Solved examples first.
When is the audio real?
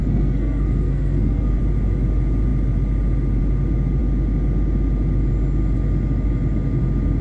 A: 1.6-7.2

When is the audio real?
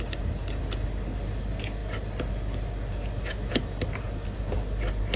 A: 0.0-5.2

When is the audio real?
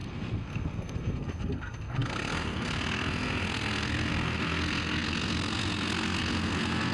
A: none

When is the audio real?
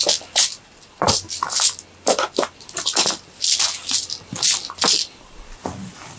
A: 0.0-6.2